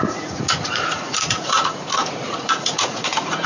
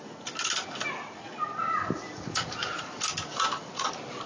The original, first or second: second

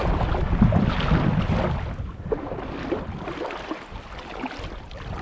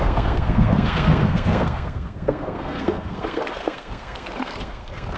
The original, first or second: first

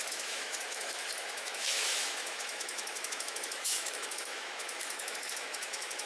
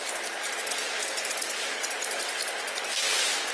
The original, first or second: second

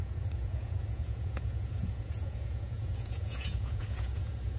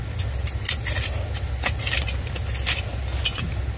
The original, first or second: second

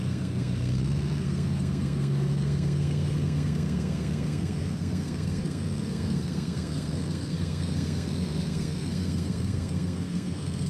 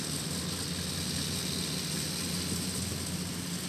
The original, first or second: second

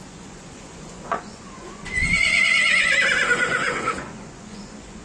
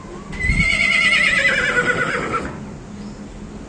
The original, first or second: second